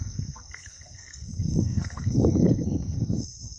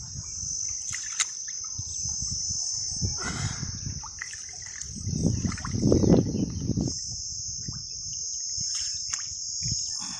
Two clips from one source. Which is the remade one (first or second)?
first